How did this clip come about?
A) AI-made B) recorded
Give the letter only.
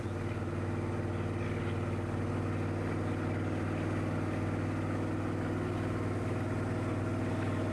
B